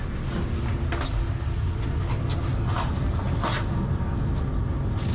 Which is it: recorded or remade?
recorded